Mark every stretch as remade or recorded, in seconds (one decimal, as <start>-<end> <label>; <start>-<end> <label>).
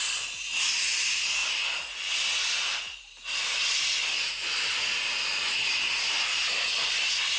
0.0-7.4 recorded